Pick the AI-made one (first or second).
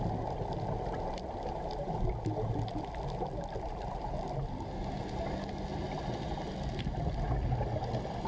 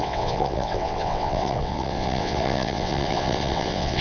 second